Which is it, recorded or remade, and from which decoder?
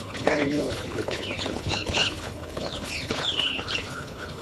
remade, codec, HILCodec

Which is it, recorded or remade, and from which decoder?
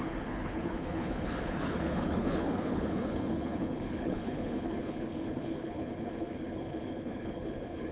remade, codec, HILCodec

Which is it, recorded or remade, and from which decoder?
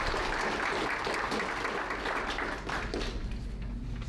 recorded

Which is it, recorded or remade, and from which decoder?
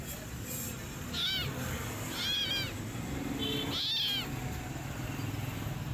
recorded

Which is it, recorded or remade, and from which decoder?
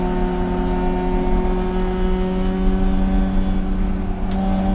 recorded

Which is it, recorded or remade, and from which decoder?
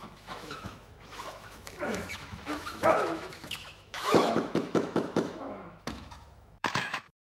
remade, autoencoder, DAC-VAE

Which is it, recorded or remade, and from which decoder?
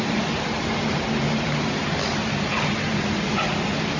recorded